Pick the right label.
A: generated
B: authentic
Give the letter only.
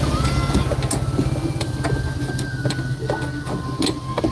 B